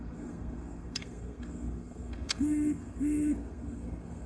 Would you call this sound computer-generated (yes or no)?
yes